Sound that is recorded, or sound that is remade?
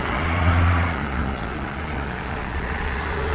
remade